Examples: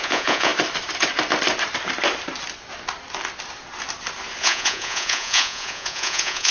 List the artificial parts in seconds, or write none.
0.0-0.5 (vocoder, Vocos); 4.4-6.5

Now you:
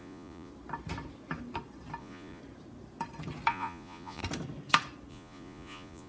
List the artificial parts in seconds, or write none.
0.0-0.5 (vocoder, Vocos); 2.0-2.4; 3.5-4.2; 5.1-6.1

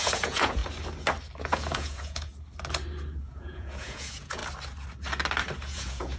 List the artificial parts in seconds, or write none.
0.0-0.6 (vocoder, Vocos); 1.4-2.3; 3.2-4.4; 5.6-6.2

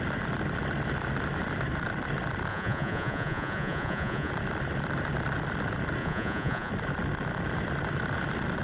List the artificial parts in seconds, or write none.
2.5-4.3 (vocoder, Vocos); 6.0-6.7

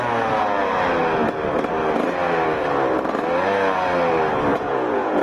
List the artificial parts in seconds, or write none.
4.5-5.2 (vocoder, Vocos)

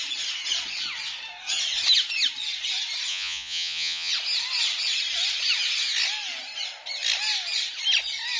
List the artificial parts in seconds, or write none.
3.1-4.1 (vocoder, Vocos)

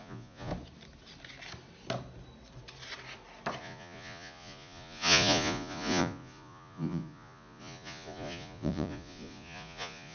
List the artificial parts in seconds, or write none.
0.0-0.5 (vocoder, Vocos); 3.6-10.1

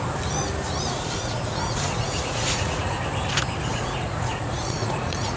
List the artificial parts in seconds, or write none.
0.8-3.0 (vocoder, Vocos); 3.7-5.4